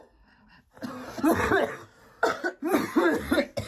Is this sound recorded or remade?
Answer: recorded